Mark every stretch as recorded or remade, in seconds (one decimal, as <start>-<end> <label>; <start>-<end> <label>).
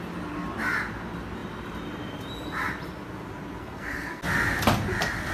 0.0-3.6 recorded; 3.6-4.2 remade; 4.2-5.3 recorded